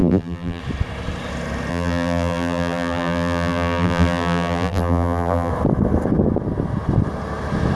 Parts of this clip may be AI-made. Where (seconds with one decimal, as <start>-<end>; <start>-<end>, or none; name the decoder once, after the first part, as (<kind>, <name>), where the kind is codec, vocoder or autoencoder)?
0.0-0.6 (vocoder, BigVGAN v2); 1.7-5.5